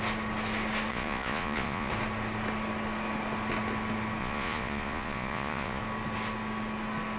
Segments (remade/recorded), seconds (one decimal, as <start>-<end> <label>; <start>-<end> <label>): 0.0-0.9 recorded; 0.9-1.9 remade; 1.9-4.2 recorded; 4.2-5.8 remade; 5.8-7.2 recorded